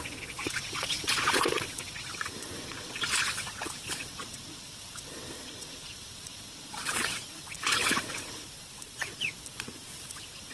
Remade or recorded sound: remade